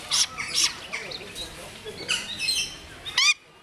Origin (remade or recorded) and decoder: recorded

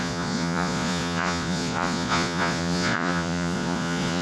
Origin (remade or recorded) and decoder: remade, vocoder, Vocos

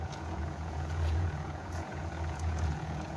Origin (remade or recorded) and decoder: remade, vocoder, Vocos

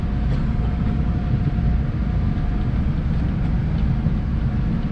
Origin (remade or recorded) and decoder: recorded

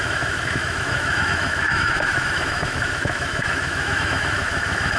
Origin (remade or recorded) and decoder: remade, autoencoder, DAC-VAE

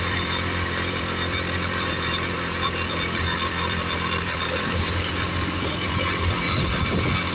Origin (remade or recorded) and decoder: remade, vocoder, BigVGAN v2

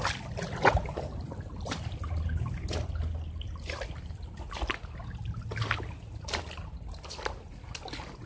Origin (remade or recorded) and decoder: recorded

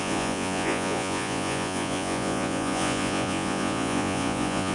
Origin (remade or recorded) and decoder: remade, vocoder, Vocos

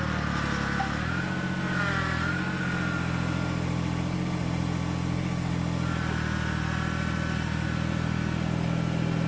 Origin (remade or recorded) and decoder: recorded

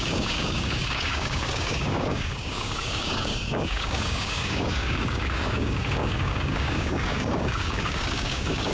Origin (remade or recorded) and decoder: remade, codec, DAC